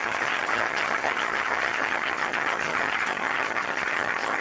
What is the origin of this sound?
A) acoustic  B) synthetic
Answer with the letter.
B